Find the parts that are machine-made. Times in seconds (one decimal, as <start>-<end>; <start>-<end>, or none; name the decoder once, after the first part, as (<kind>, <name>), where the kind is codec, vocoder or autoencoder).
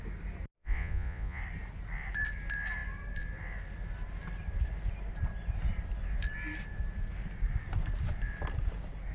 0.6-1.4 (vocoder, Vocos)